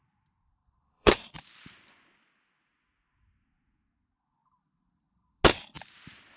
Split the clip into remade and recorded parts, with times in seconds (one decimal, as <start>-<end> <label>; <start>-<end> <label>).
0.0-0.6 recorded; 0.6-1.3 remade; 1.3-6.4 recorded